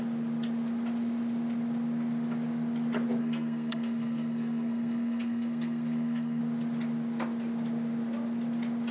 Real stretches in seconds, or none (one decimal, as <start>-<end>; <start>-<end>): 0.0-3.2; 6.4-8.9